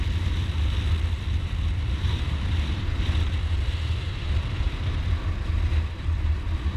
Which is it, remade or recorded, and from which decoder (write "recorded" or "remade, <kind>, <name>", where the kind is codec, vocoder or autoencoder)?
recorded